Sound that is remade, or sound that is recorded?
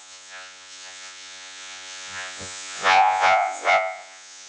remade